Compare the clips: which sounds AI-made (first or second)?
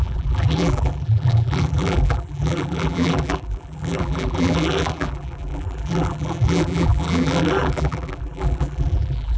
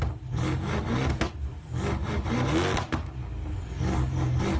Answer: first